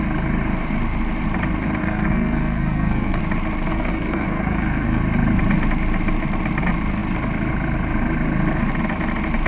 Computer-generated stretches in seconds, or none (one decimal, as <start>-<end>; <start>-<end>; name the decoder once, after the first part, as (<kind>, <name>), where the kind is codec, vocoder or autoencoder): 1.8-3.2 (codec, SNAC); 3.7-5.0